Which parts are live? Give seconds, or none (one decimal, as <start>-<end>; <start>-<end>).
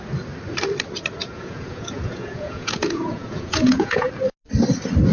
0.0-1.2; 4.1-5.1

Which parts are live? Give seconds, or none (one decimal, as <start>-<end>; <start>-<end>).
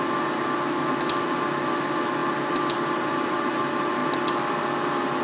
0.0-2.2; 3.5-5.2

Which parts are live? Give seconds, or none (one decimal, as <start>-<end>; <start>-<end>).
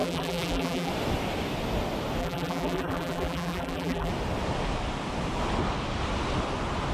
0.9-2.2; 4.1-6.9